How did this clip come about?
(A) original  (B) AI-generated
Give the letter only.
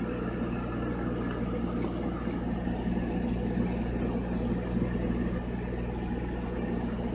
A